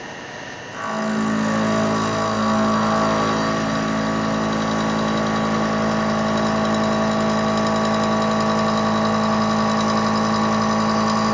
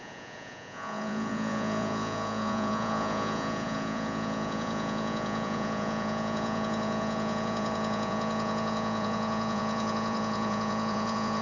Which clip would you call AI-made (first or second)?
second